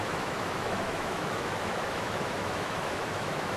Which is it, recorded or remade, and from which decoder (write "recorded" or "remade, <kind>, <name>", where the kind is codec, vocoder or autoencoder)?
remade, autoencoder, DAC-VAE